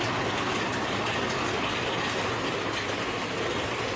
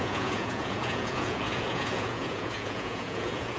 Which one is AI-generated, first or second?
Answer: second